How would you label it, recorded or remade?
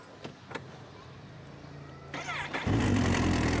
recorded